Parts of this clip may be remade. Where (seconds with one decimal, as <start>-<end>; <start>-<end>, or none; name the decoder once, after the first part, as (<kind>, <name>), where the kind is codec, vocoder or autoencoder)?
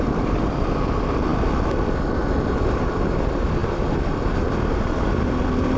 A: none